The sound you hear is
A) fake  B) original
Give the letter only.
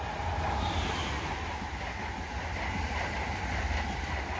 B